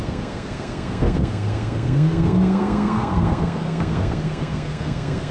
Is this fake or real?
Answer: fake